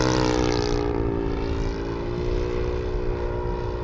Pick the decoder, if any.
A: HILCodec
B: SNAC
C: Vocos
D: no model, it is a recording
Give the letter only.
D